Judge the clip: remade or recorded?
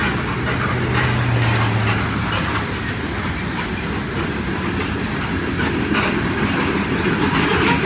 recorded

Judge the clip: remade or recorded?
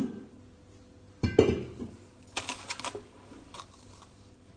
recorded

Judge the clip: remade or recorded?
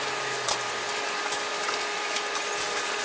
recorded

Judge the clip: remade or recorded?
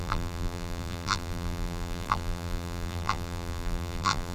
remade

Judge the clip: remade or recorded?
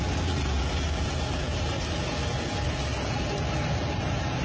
recorded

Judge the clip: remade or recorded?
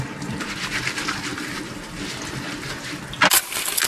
recorded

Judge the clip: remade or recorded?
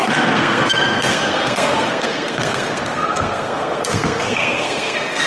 remade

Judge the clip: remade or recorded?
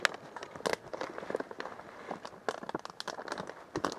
recorded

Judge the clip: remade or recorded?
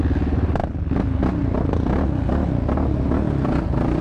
recorded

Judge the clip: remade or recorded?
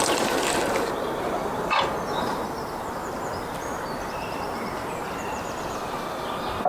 remade